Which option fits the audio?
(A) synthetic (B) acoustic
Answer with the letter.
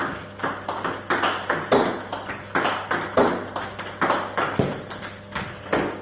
B